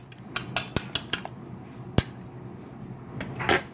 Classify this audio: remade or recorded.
recorded